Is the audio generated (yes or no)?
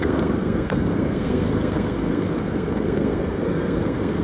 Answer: yes